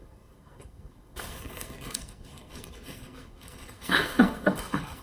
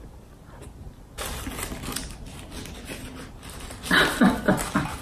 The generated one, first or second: first